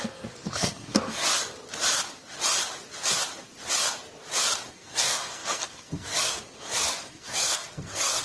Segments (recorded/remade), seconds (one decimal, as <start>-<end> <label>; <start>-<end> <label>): 0.0-1.2 remade; 1.2-4.7 recorded; 4.7-8.2 remade